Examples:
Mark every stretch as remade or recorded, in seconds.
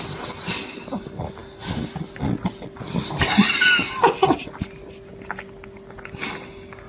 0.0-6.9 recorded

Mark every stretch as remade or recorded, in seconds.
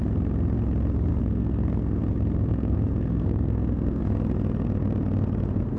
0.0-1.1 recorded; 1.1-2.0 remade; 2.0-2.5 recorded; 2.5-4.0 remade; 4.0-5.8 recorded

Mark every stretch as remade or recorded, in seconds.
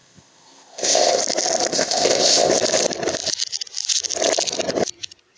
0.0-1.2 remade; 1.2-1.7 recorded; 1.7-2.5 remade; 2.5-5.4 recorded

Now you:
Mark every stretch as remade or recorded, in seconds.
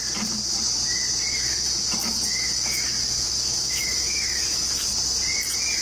0.0-1.3 recorded; 1.3-4.8 remade; 4.8-5.8 recorded